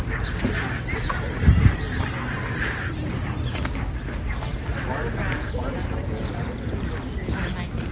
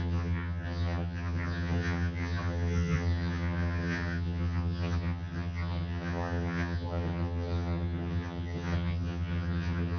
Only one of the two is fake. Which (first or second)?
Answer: second